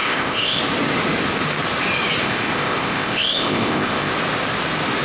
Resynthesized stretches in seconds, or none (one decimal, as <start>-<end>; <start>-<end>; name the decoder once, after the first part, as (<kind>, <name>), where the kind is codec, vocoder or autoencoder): 0.0-0.6 (codec, ZipCodec); 2.2-4.1